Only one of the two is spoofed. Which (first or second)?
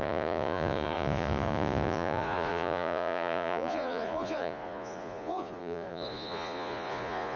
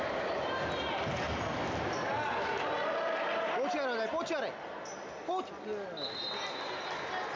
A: first